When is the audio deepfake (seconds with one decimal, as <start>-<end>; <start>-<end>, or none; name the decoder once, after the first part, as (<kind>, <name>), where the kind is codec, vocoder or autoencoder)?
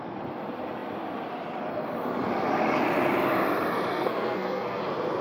3.9-4.8 (codec, SNAC)